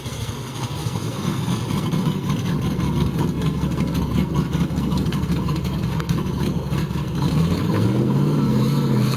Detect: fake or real fake